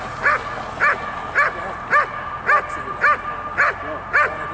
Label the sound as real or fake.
real